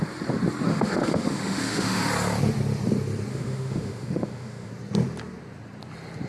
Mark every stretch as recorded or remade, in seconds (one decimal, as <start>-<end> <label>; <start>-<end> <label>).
0.0-0.7 recorded; 0.7-2.0 remade; 2.0-3.3 recorded; 3.3-4.7 remade; 4.7-6.3 recorded